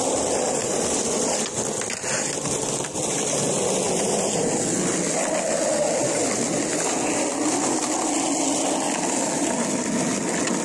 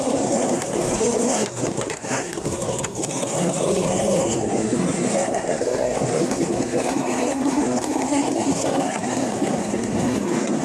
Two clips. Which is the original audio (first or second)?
first